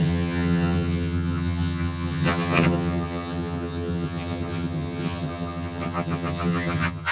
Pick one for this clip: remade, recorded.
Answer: remade